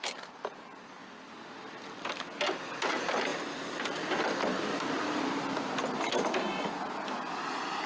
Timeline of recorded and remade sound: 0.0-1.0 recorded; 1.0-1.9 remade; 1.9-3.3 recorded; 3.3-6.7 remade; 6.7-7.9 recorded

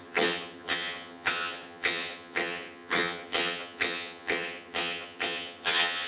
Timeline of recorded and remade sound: 0.0-6.1 remade